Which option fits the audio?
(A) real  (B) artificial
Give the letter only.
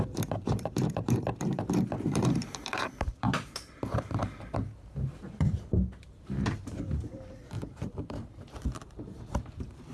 B